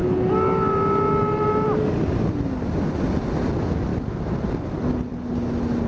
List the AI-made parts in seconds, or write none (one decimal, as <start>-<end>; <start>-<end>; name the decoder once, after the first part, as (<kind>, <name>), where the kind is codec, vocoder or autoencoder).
3.9-4.5 (vocoder, BigVGAN v2)